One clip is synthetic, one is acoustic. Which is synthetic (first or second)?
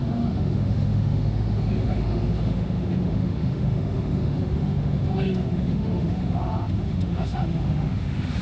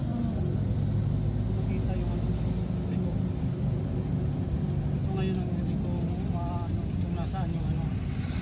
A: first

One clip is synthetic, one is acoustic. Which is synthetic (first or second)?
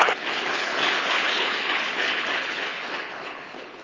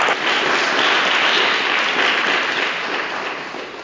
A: first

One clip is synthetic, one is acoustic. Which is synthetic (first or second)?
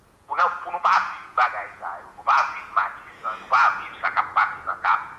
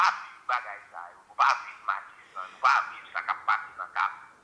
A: first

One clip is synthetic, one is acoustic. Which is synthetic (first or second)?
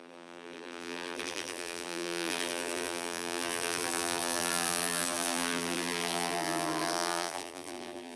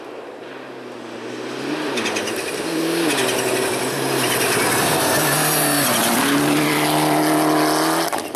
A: first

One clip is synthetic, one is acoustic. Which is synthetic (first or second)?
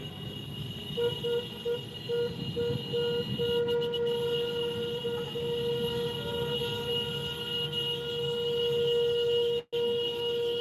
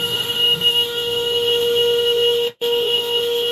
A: second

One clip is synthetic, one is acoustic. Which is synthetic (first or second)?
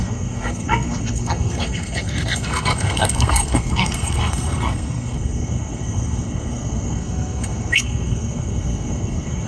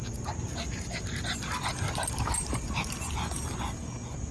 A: first